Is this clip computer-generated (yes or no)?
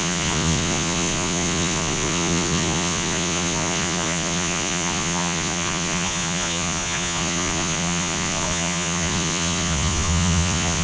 yes